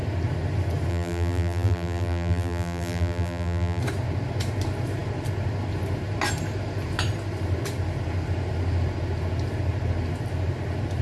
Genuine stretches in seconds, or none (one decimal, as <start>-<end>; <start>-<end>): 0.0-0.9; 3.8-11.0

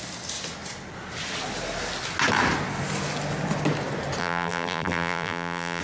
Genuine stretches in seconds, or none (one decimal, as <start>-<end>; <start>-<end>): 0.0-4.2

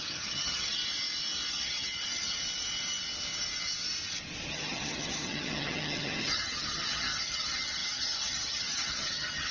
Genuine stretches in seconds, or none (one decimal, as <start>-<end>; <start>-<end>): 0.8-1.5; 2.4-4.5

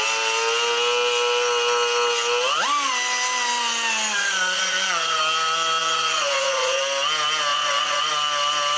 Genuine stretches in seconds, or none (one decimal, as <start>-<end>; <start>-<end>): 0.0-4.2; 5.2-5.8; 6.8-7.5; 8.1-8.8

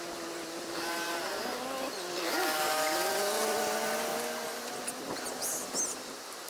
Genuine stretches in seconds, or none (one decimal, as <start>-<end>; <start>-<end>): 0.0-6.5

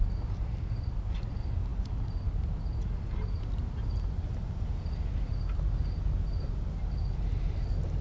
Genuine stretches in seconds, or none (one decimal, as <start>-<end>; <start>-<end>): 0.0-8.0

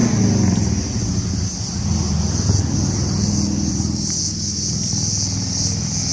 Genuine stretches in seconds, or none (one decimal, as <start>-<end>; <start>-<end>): 0.0-6.1

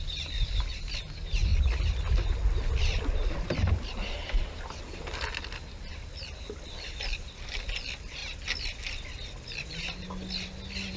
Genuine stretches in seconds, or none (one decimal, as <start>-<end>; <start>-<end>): 0.0-11.0